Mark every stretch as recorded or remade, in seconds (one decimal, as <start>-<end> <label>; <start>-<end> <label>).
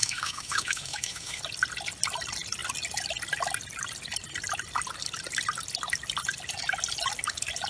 0.0-1.4 remade; 1.4-7.7 recorded